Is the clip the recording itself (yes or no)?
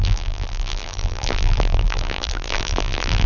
no